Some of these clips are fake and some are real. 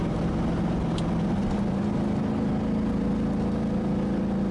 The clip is real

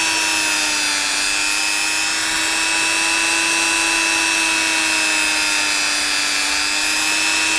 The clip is real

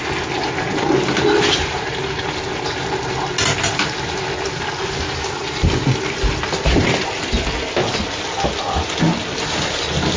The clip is real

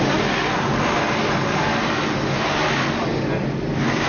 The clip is real